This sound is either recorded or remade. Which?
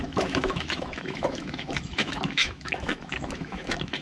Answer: remade